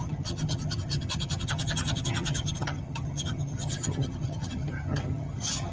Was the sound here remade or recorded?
remade